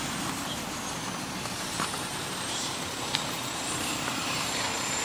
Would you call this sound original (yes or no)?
no